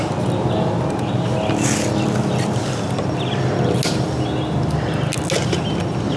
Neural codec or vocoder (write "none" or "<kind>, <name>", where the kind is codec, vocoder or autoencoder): none